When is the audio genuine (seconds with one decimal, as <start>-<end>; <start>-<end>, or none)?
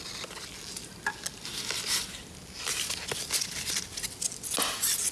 0.0-5.1